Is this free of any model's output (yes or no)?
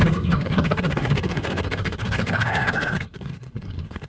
no